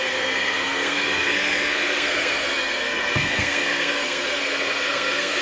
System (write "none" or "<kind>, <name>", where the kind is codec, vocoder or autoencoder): codec, SNAC